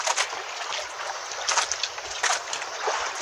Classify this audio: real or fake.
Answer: real